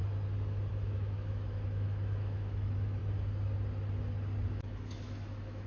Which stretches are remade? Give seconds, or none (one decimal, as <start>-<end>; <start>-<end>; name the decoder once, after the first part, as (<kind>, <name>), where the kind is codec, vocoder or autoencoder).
0.7-3.0 (autoencoder, DAC-VAE); 4.5-5.7